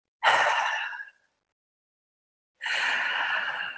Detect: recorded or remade recorded